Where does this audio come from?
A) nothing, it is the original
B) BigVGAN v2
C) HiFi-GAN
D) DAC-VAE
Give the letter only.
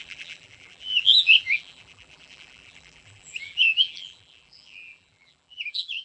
B